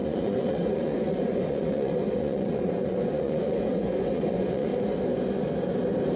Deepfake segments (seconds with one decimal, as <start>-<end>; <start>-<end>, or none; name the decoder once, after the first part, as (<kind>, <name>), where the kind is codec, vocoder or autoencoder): 0.0-4.7 (vocoder, Vocos)